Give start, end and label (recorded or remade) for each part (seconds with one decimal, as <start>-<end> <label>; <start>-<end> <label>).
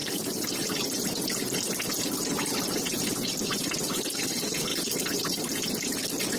0.0-4.7 recorded; 4.7-5.4 remade; 5.4-6.4 recorded